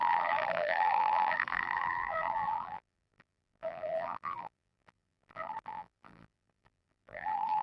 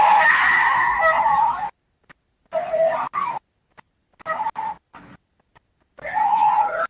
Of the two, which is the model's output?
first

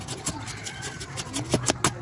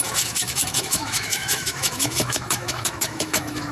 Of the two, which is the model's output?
second